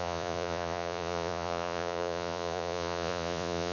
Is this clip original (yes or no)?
no